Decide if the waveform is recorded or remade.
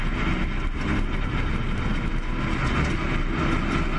recorded